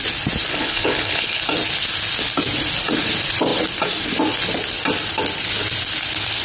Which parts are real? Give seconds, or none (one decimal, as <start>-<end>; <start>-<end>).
0.0-0.5; 1.4-6.4